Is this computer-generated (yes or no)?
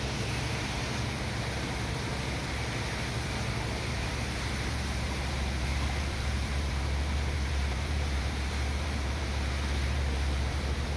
yes